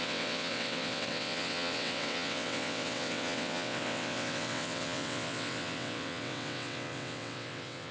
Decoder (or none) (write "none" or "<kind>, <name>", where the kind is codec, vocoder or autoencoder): vocoder, WaveNeXt